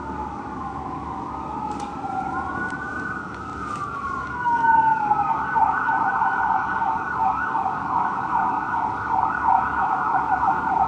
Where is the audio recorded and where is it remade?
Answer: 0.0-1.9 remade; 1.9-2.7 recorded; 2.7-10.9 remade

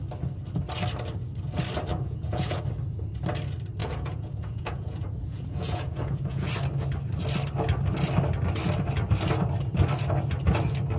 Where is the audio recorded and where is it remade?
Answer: 0.0-1.9 recorded; 1.9-2.6 remade; 2.6-3.8 recorded; 3.8-6.5 remade; 6.5-11.0 recorded

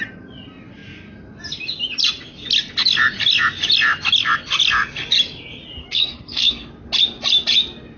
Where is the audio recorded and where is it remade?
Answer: 0.0-5.8 recorded; 5.8-6.7 remade; 6.7-8.0 recorded

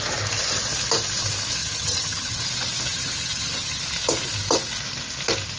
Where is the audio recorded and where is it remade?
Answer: 0.0-1.6 recorded; 1.6-2.4 remade; 2.4-2.9 recorded; 2.9-3.8 remade; 3.8-5.6 recorded

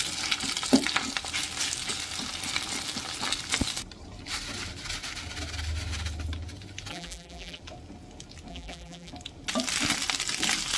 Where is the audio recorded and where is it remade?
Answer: 0.0-6.9 recorded; 6.9-7.6 remade; 7.6-8.5 recorded; 8.5-9.1 remade; 9.1-10.8 recorded

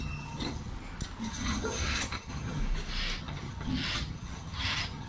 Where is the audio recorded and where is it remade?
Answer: 0.0-0.7 remade; 0.7-1.3 recorded; 1.3-2.6 remade; 2.6-3.2 recorded; 3.2-5.1 remade